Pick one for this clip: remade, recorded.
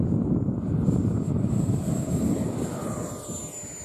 recorded